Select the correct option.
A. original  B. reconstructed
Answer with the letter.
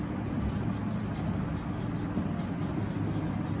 A